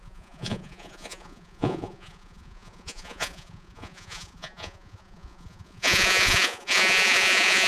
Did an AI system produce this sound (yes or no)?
yes